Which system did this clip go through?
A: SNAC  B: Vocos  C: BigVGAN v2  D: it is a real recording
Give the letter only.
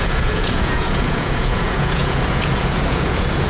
B